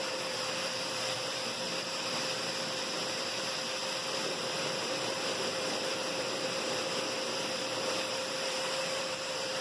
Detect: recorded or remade remade